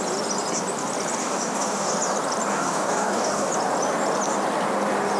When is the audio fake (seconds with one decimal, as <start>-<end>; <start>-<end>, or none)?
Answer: 1.2-1.9; 2.5-3.5